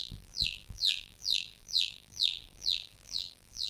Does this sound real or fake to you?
fake